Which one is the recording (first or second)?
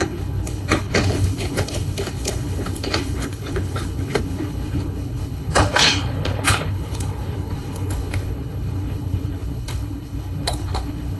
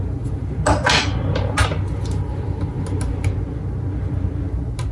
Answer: second